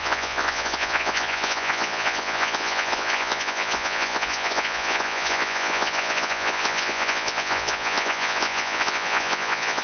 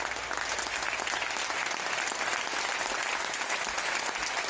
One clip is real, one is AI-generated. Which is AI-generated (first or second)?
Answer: first